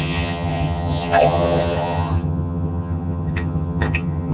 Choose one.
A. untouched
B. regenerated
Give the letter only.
B